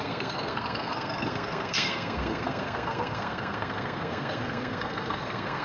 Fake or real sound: fake